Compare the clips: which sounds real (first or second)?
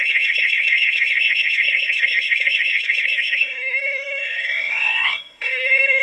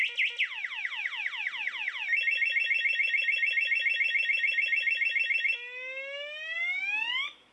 second